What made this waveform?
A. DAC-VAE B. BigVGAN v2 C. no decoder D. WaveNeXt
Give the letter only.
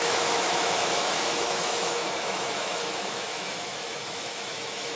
A